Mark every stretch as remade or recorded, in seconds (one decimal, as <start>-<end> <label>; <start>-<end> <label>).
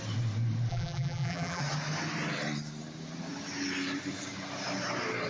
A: 0.0-0.7 recorded; 0.7-1.6 remade; 1.6-5.3 recorded